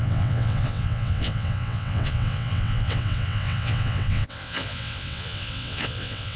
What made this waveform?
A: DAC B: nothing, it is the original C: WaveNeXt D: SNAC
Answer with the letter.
C